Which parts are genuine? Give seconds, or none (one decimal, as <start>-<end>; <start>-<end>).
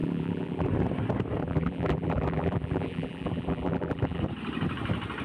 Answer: 0.7-1.4; 4.2-5.2